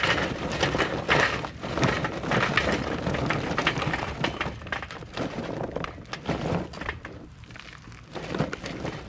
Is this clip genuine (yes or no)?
yes